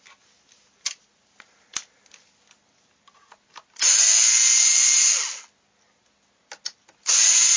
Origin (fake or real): real